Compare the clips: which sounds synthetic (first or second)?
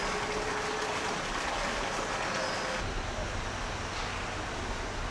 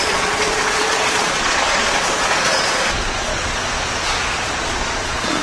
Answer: second